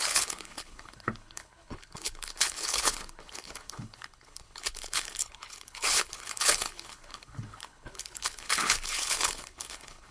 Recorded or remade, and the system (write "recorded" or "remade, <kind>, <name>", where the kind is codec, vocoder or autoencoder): remade, codec, HILCodec